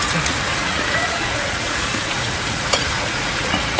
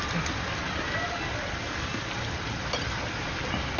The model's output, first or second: first